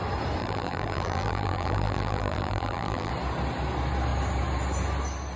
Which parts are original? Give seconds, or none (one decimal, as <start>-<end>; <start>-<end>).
0.0-0.4; 3.1-5.4